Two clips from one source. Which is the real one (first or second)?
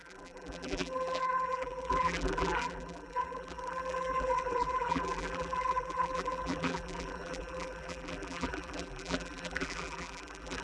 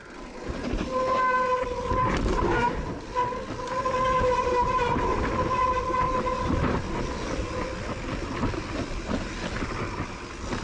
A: second